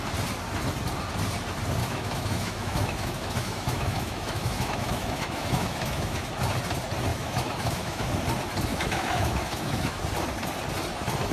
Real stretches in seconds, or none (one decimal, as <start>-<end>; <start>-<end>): 0.0-1.8; 6.3-7.1; 8.1-8.7; 10.0-11.3